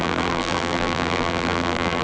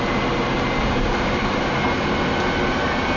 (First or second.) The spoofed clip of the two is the first